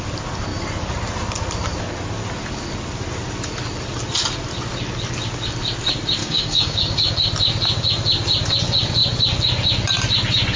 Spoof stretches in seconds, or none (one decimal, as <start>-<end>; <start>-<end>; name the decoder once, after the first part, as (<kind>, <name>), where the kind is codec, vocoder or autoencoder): 6.2-7.1 (codec, DAC)

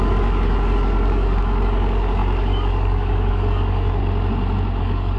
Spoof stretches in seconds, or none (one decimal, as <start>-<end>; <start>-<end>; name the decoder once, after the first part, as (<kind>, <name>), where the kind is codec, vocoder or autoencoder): 0.0-4.0 (codec, DAC); 4.8-5.2

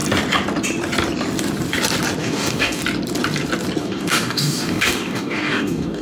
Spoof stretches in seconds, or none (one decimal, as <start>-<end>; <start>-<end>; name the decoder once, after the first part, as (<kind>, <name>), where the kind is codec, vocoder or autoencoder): 2.2-2.8 (codec, DAC); 3.8-6.0

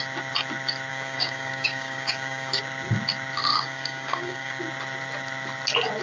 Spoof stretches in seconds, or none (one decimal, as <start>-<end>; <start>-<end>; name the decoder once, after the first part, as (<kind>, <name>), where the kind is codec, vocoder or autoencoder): 0.9-2.6 (codec, DAC); 3.5-4.6

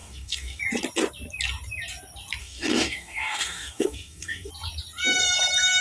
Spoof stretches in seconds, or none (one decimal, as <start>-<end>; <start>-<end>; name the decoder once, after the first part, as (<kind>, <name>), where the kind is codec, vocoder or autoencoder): 0.0-0.6 (codec, DAC); 2.4-4.5

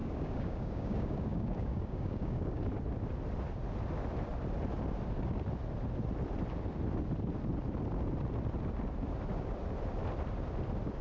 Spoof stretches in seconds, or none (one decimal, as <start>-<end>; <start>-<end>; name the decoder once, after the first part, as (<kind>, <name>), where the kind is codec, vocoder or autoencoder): 0.0-2.6 (codec, DAC)

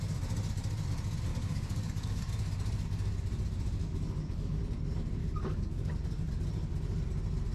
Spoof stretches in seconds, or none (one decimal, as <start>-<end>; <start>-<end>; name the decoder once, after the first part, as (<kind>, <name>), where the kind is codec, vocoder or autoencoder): 1.3-2.3 (codec, DAC); 3.8-4.6; 5.2-5.9